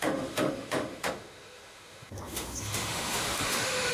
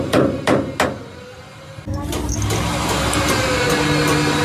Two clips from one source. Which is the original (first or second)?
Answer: second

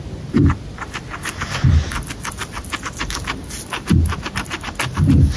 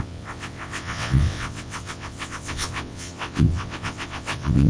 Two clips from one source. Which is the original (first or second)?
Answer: first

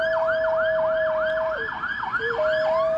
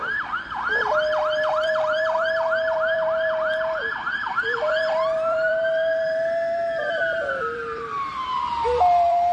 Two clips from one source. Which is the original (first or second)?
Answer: first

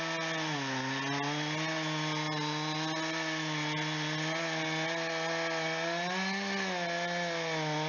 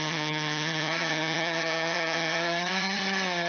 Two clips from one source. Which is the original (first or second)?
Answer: first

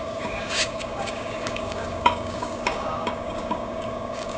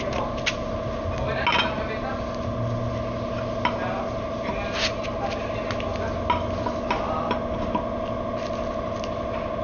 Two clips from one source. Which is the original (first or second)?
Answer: second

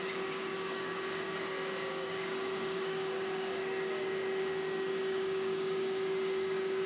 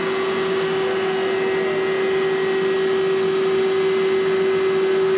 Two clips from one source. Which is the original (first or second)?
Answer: second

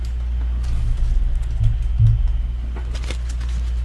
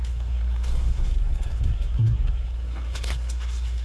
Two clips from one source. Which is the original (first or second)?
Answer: first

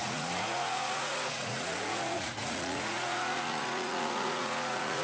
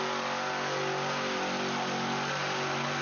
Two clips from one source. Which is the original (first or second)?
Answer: second